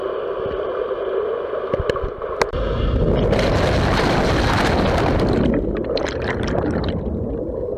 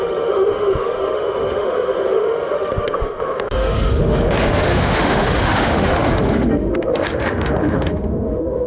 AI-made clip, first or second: second